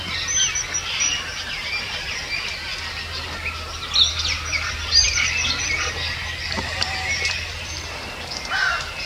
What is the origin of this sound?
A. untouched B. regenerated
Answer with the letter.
A